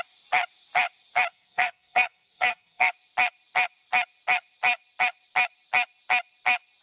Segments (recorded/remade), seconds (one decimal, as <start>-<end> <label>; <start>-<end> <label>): 0.0-1.3 recorded; 1.3-2.9 remade; 2.9-6.8 recorded